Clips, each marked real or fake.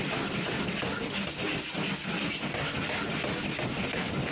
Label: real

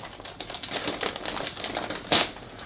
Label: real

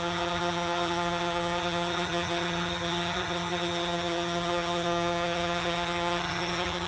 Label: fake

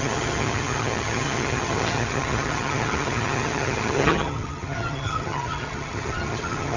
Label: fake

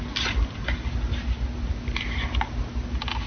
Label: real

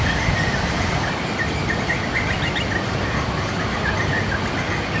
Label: real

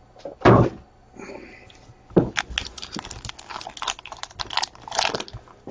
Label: real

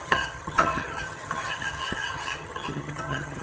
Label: fake